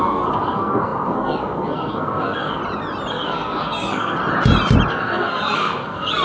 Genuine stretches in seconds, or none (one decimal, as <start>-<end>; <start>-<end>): 2.6-3.1; 4.2-4.9